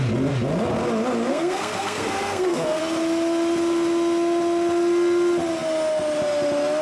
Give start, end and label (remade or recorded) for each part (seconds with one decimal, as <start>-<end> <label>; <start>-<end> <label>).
0.0-1.3 recorded; 1.3-2.8 remade; 2.8-6.8 recorded